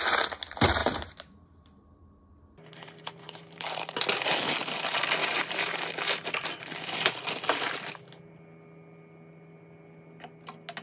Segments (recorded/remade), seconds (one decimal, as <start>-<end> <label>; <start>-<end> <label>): 0.0-0.8 recorded; 0.8-4.0 remade; 4.0-5.2 recorded; 5.2-5.8 remade; 5.8-10.8 recorded